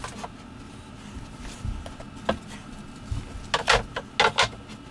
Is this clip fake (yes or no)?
no